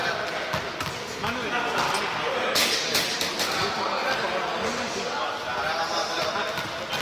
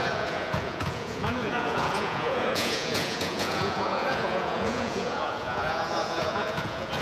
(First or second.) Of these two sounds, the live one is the first